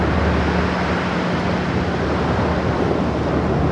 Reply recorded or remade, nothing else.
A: recorded